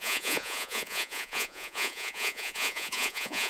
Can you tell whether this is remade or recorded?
remade